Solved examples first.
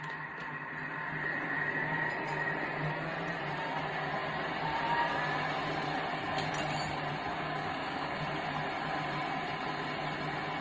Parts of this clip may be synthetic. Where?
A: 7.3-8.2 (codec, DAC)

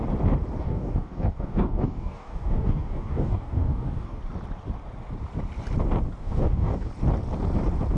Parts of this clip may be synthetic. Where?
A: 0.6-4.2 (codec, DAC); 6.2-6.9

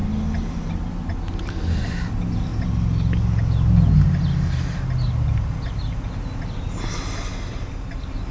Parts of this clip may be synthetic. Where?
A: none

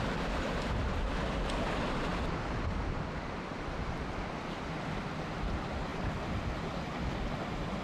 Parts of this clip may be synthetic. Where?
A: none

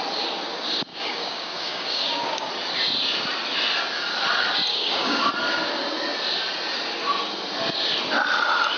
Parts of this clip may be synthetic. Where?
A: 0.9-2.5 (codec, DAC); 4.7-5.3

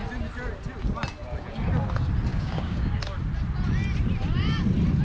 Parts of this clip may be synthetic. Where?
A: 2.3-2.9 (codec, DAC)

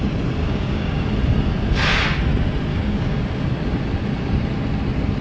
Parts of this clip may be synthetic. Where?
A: 0.4-1.1 (codec, DAC); 2.7-3.2

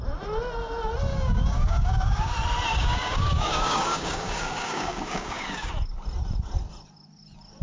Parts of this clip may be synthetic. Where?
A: 1.1-2.3 (codec, DAC); 2.7-5.7